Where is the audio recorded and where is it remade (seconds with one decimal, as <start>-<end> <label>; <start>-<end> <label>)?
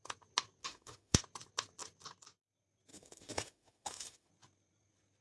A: 0.0-0.6 recorded; 0.6-1.2 remade; 1.2-2.9 recorded; 2.9-4.3 remade; 4.3-5.2 recorded